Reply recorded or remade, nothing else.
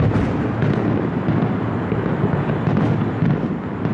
recorded